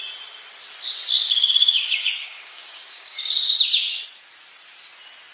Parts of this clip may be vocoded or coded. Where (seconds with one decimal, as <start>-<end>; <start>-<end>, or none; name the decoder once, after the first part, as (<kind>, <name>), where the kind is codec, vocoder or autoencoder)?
1.2-3.3 (codec, DAC)